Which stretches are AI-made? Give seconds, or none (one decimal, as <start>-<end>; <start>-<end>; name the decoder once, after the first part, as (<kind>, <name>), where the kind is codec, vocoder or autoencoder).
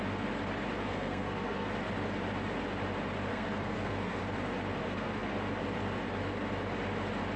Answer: 0.8-1.7 (codec, SNAC); 3.3-4.2; 4.8-5.3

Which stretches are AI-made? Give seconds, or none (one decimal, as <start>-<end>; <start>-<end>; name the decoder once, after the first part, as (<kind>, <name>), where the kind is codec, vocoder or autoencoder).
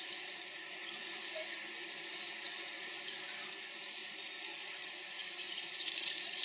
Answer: 0.0-0.8 (vocoder, Vocos); 4.6-6.4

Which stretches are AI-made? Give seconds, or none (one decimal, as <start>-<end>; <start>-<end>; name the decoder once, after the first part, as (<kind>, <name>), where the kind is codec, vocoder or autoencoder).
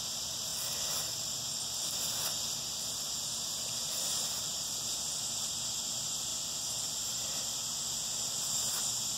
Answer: none